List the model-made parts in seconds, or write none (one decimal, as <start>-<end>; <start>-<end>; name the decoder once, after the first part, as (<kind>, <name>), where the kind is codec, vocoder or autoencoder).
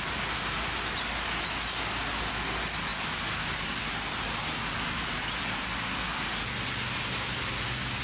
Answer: none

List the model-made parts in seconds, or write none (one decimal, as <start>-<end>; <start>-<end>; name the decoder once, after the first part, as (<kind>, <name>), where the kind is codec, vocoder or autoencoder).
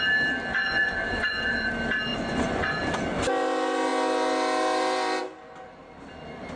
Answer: 0.5-1.7 (vocoder, Vocos); 2.1-3.0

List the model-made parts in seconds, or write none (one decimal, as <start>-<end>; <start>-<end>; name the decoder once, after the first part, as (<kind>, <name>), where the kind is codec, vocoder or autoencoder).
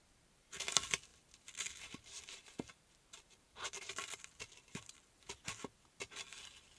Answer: 0.0-0.7 (vocoder, BigVGAN v2); 1.1-5.2